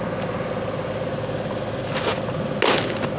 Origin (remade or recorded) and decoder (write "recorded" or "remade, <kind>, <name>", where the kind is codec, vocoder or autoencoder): recorded